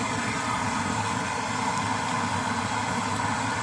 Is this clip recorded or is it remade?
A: recorded